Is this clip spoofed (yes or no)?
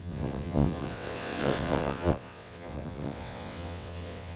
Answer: yes